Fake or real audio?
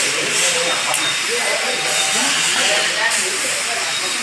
real